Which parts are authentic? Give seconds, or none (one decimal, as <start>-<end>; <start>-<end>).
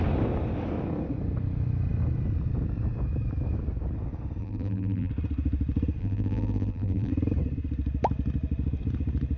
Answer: 0.0-4.4; 5.1-6.0; 7.1-9.4